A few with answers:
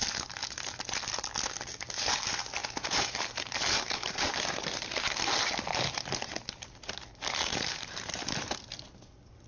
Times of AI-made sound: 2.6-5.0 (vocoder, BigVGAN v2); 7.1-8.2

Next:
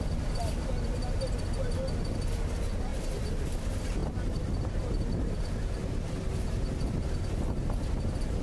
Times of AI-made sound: 2.9-3.5 (vocoder, BigVGAN v2)

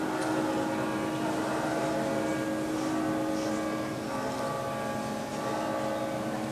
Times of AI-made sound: none

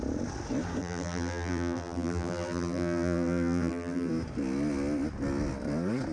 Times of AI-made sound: 0.8-4.1 (vocoder, BigVGAN v2)

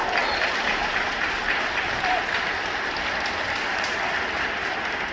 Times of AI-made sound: 0.0-5.1 (vocoder, BigVGAN v2)

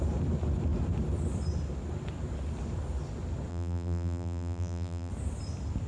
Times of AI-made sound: 3.5-5.1 (vocoder, BigVGAN v2)

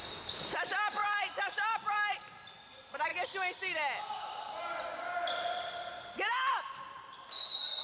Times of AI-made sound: 0.0-3.1 (vocoder, BigVGAN v2); 6.5-7.8

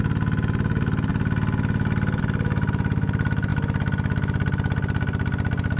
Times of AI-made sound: 0.0-1.1 (vocoder, BigVGAN v2); 2.2-3.5